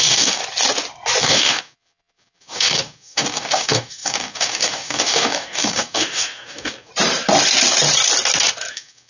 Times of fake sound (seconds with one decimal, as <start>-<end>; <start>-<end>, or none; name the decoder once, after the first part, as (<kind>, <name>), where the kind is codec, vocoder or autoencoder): 0.0-0.4 (codec, DAC); 1.2-6.9; 8.7-9.1